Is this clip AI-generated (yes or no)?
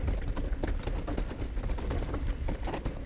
no